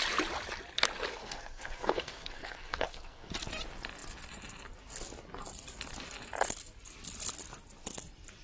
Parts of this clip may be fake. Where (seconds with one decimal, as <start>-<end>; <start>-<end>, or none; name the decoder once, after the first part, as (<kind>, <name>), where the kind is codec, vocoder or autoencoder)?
1.1-3.3 (codec, SNAC)